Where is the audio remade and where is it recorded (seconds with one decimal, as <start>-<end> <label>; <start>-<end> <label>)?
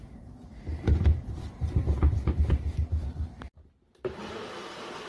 0.0-5.1 recorded